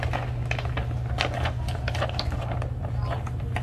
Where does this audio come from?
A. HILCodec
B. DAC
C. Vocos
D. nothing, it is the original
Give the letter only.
D